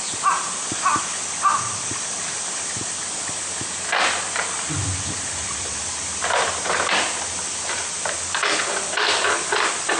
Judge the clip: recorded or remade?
recorded